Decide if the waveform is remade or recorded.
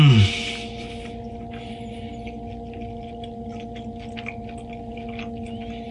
recorded